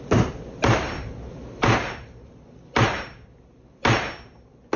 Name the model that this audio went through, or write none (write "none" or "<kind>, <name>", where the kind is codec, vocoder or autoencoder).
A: none